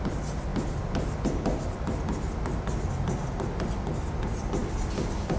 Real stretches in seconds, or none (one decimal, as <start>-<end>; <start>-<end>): 0.0-5.4